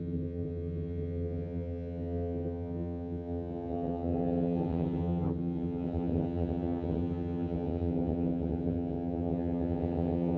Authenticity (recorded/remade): remade